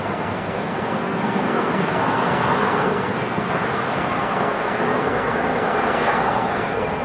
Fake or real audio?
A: fake